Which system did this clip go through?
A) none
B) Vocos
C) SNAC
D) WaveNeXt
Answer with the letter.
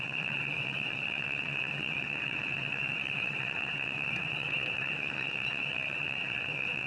D